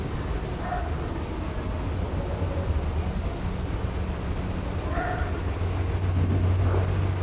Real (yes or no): yes